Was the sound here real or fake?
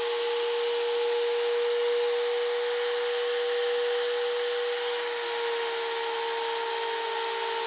real